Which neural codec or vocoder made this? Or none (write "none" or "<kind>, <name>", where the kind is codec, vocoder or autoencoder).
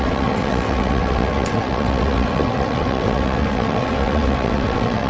vocoder, WaveNeXt